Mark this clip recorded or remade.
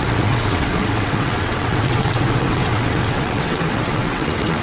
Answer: remade